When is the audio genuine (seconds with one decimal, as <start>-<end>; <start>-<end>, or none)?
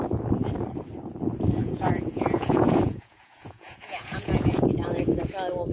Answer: 0.0-1.6; 5.0-5.7